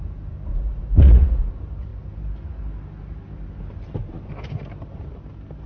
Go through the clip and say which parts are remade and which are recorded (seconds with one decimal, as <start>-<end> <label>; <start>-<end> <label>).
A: 0.0-0.5 recorded; 0.5-1.5 remade; 1.5-5.7 recorded